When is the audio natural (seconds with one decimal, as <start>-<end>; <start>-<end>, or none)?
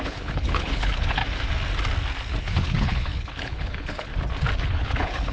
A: 1.2-2.4; 4.1-4.6